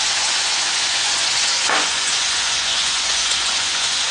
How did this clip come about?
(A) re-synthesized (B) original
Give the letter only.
A